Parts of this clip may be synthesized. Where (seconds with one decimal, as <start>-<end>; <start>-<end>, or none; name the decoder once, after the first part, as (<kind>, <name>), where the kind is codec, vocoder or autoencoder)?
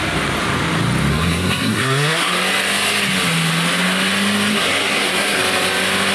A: 1.1-2.3 (codec, SNAC); 4.5-5.4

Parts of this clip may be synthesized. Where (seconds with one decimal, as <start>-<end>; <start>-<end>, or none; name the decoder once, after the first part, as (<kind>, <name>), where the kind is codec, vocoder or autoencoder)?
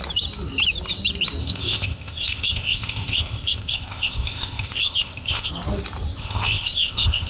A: 1.4-5.5 (codec, ZipCodec); 6.2-7.3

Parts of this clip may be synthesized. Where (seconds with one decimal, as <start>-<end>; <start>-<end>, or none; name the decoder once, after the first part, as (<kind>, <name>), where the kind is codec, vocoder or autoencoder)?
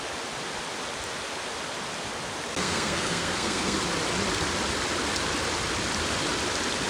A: 2.5-3.8 (codec, SNAC)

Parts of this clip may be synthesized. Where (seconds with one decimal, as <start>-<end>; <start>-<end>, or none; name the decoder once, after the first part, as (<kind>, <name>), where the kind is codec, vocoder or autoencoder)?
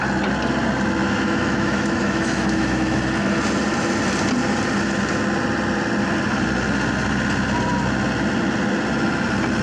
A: 1.0-3.0 (autoencoder, DAC-VAE)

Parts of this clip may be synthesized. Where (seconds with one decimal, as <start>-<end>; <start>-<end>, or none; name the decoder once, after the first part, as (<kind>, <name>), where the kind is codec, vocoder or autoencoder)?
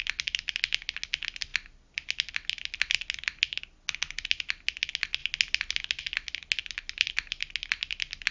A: none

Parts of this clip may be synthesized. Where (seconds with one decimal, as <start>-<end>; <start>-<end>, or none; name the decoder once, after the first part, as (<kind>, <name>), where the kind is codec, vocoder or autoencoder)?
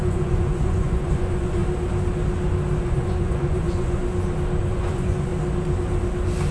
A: 0.0-1.6 (vocoder, Vocos); 2.8-4.0; 4.6-5.3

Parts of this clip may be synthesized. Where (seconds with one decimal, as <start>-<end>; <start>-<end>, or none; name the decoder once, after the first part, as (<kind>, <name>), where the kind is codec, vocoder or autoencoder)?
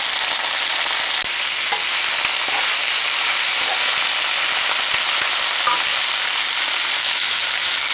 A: 7.0-7.9 (autoencoder, DAC-VAE)